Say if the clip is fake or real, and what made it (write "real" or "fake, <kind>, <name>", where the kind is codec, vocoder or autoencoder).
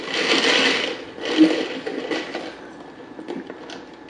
real